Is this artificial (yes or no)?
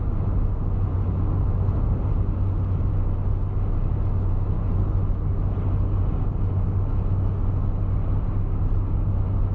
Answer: no